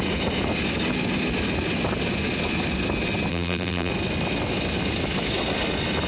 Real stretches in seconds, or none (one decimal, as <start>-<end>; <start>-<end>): 0.0-3.3; 3.9-6.1